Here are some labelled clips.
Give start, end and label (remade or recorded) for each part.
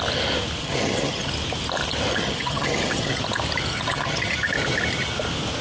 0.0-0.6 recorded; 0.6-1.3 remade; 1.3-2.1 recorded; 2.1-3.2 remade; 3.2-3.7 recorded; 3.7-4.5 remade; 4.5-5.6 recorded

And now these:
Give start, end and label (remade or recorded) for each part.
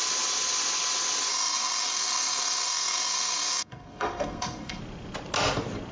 0.0-1.3 recorded; 1.3-4.8 remade; 4.8-5.9 recorded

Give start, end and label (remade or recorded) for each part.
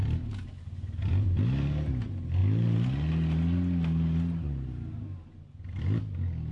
0.0-6.5 recorded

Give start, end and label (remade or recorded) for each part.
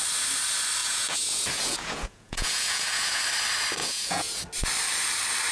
0.0-0.8 recorded; 0.8-3.2 remade; 3.2-3.8 recorded; 3.8-4.4 remade; 4.4-5.5 recorded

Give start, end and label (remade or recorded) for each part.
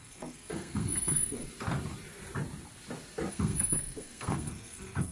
0.0-1.4 remade; 1.4-3.3 recorded; 3.3-5.1 remade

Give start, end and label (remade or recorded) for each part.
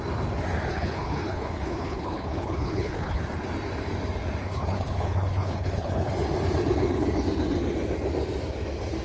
0.0-0.7 recorded; 0.7-3.2 remade; 3.2-4.4 recorded; 4.4-6.1 remade; 6.1-9.0 recorded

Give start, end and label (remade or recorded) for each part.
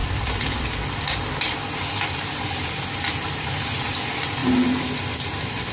0.0-4.4 remade; 4.4-5.7 recorded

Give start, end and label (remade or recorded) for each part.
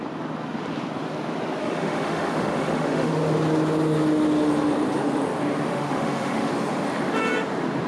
0.0-1.6 recorded; 1.6-3.1 remade; 3.1-5.7 recorded; 5.7-6.5 remade; 6.5-7.9 recorded